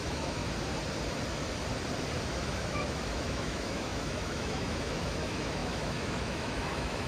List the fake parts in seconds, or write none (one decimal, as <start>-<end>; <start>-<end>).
0.0-0.4; 2.3-7.1